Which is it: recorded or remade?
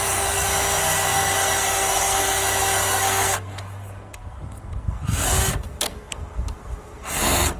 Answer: remade